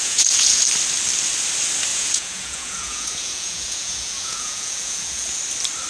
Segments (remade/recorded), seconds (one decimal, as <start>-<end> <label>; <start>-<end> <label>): 0.0-0.6 remade; 0.6-1.9 recorded; 1.9-5.4 remade; 5.4-5.9 recorded